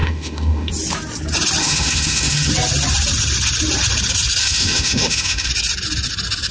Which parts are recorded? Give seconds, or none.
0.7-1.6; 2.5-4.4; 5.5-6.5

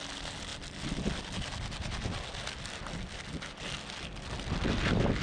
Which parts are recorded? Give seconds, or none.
0.0-5.2